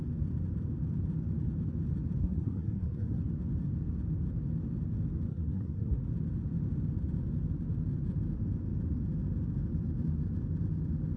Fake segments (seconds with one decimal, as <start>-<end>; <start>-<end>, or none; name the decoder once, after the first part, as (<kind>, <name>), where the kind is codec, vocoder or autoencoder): 2.2-3.2 (codec, SNAC); 5.3-6.0